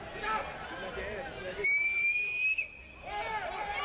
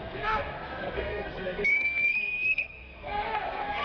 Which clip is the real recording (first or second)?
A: first